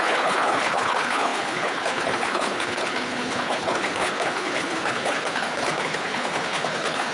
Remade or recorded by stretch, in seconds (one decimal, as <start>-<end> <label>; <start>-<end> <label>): 0.0-7.1 remade